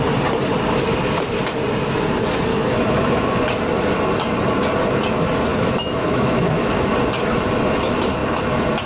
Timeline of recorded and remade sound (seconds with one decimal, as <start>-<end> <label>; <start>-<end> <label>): 0.0-2.5 recorded; 2.5-3.4 remade; 3.4-5.5 recorded; 5.5-6.8 remade; 6.8-8.9 recorded

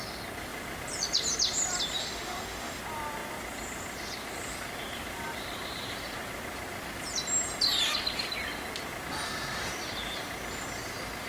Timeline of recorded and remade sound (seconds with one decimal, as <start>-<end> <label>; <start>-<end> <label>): 0.0-2.0 recorded; 2.0-2.8 remade; 2.8-11.3 recorded

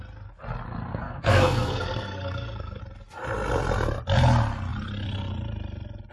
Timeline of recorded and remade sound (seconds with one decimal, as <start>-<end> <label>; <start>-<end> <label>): 0.0-0.9 recorded; 0.9-2.8 remade; 2.8-6.1 recorded

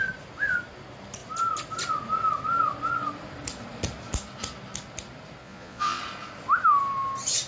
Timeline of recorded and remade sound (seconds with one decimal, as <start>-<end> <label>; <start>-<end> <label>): 0.0-5.4 recorded; 5.4-6.0 remade; 6.0-7.5 recorded

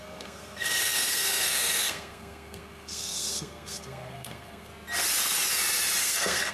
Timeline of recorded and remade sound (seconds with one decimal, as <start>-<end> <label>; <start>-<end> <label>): 0.0-4.7 remade; 4.7-6.0 recorded; 6.0-6.5 remade

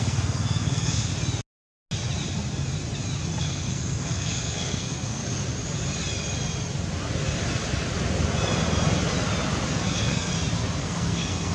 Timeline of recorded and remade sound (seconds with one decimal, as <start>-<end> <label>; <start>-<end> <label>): 0.0-1.1 remade; 1.1-3.4 recorded; 3.4-5.2 remade; 5.2-9.7 recorded; 9.7-10.3 remade; 10.3-10.8 recorded; 10.8-11.5 remade

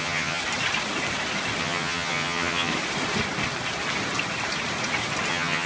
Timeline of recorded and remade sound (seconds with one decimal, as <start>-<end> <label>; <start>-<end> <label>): 0.0-0.4 remade; 0.4-1.6 recorded; 1.6-2.7 remade; 2.7-5.3 recorded; 5.3-5.7 remade

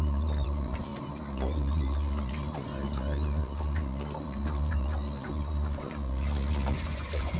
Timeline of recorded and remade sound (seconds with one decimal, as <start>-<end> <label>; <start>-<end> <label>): 0.0-7.4 remade